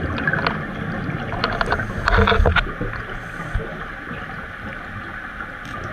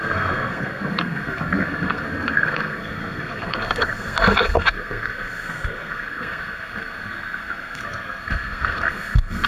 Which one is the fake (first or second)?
second